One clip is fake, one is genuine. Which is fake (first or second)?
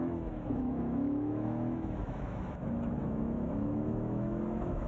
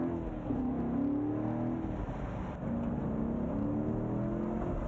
first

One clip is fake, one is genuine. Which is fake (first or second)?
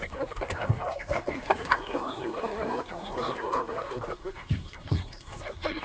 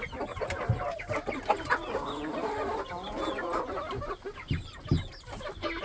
first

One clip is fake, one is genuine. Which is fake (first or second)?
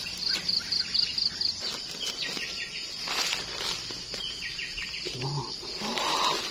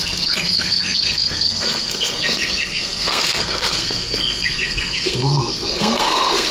second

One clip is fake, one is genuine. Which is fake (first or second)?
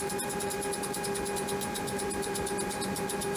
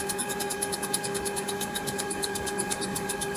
second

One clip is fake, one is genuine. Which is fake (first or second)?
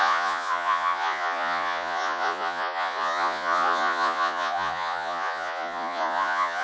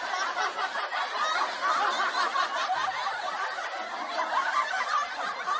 first